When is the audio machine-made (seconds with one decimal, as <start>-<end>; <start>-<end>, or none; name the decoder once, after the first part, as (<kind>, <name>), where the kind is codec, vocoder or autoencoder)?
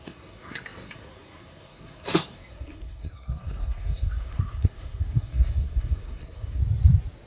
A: 0.0-6.6 (codec, SNAC)